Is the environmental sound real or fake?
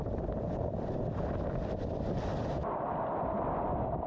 real